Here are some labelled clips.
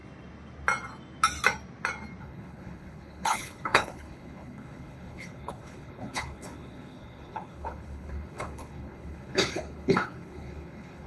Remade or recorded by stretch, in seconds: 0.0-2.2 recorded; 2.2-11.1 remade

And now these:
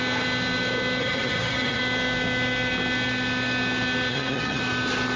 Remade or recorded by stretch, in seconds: 0.0-1.0 recorded; 1.0-1.8 remade; 1.8-4.1 recorded; 4.1-4.6 remade; 4.6-5.2 recorded

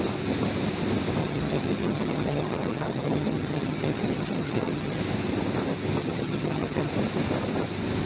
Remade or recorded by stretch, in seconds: 0.0-1.2 recorded; 1.2-5.0 remade; 5.0-6.0 recorded; 6.0-6.9 remade; 6.9-8.1 recorded

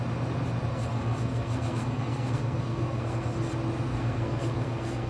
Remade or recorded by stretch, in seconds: 0.0-0.7 recorded; 0.7-3.5 remade; 3.5-3.9 recorded; 3.9-5.1 remade

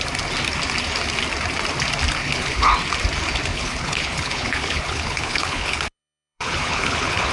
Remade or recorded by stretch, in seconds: 0.0-2.2 recorded; 2.2-2.7 remade; 2.7-3.5 recorded; 3.5-7.3 remade

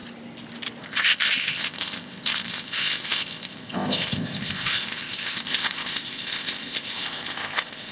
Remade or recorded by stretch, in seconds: 0.0-0.8 recorded; 0.8-7.9 remade

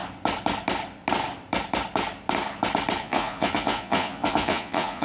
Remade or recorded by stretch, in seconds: 0.0-3.0 recorded; 3.0-5.0 remade